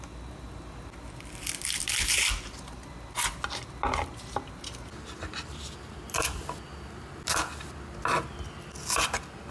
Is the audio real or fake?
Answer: real